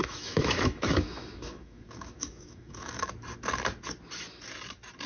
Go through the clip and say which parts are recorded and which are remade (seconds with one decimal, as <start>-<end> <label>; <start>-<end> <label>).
0.0-3.1 remade; 3.1-5.1 recorded